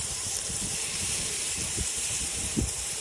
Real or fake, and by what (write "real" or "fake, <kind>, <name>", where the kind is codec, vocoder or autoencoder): fake, vocoder, BigVGAN v2